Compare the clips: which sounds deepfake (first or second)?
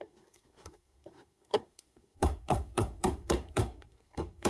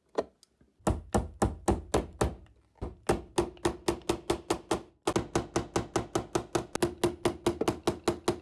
first